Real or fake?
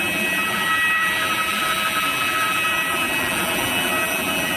fake